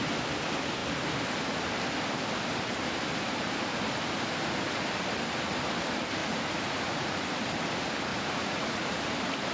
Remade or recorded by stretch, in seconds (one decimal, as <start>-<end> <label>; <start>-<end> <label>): 0.0-6.2 recorded; 6.2-7.2 remade; 7.2-8.1 recorded; 8.1-8.8 remade; 8.8-9.5 recorded